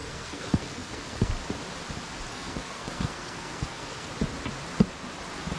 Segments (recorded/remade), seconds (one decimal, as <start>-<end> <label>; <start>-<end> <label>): 0.0-1.3 remade; 1.3-2.3 recorded; 2.3-4.1 remade; 4.1-5.6 recorded